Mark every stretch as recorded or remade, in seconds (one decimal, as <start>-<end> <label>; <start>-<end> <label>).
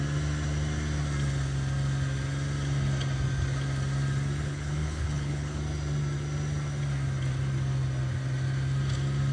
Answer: 0.0-4.4 recorded; 4.4-5.6 remade; 5.6-9.3 recorded